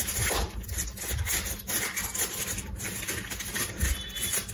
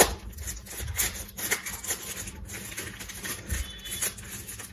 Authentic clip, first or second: second